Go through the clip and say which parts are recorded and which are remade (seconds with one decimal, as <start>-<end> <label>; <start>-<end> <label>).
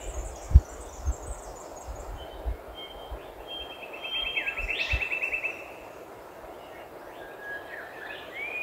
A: 0.0-1.7 recorded; 1.7-2.3 remade; 2.3-4.6 recorded; 4.6-5.6 remade; 5.6-8.6 recorded